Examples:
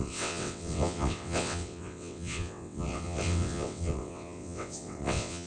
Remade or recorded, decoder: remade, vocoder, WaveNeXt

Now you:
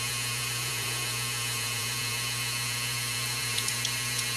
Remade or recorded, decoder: remade, vocoder, Vocos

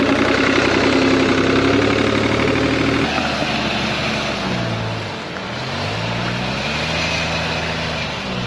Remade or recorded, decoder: recorded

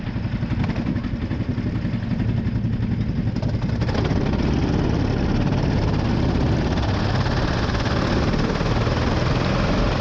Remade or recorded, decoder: recorded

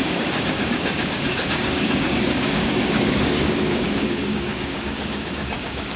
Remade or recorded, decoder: remade, codec, DAC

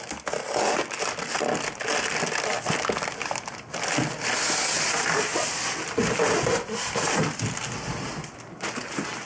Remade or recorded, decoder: recorded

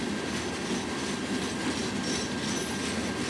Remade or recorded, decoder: recorded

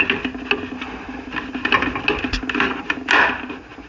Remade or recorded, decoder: recorded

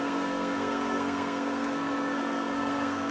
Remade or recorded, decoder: remade, codec, SNAC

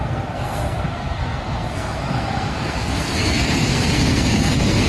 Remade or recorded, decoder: remade, codec, SNAC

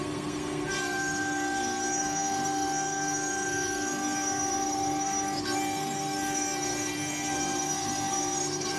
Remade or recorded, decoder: remade, codec, SNAC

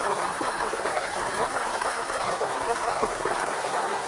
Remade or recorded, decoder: remade, codec, SNAC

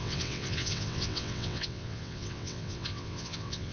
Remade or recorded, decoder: remade, vocoder, WaveNeXt